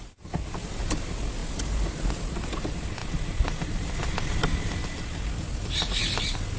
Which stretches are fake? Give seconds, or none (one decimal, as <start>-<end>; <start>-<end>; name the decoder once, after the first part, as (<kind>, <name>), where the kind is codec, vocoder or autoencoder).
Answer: none